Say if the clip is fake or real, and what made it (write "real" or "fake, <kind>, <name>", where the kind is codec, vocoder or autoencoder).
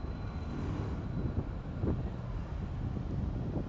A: real